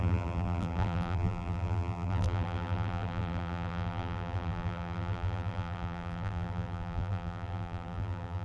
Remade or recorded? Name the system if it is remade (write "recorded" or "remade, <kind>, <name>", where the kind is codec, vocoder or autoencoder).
remade, vocoder, BigVGAN v2